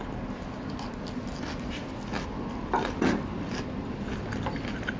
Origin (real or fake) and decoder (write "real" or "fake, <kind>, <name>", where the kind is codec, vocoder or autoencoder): real